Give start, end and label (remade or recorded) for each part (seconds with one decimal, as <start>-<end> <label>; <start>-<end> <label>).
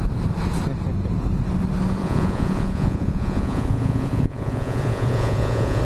0.0-2.0 recorded; 2.0-5.8 remade